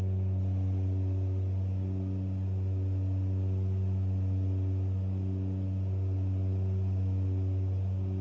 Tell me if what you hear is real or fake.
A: real